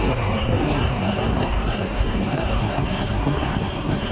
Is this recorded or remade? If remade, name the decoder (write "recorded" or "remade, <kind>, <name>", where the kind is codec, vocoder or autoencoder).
remade, codec, SNAC